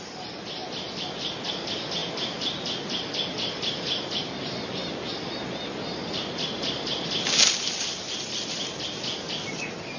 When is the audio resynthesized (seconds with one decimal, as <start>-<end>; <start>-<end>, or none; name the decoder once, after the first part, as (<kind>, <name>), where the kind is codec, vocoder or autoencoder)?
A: none